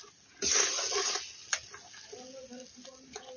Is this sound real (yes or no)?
yes